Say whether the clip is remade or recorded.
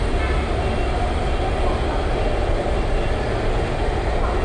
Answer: recorded